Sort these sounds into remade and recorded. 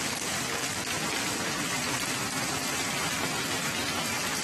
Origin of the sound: recorded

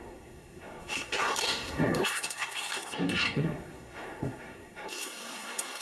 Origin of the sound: remade